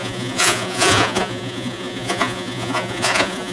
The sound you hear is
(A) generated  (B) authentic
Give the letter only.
A